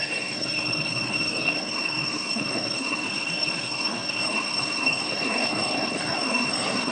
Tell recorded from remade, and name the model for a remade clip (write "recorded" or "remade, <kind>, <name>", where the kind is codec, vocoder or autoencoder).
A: remade, codec, SNAC